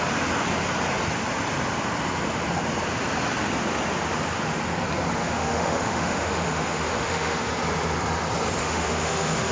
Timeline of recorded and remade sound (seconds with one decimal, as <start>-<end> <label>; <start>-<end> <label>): 0.0-5.2 recorded; 5.2-7.5 remade; 7.5-8.6 recorded; 8.6-9.5 remade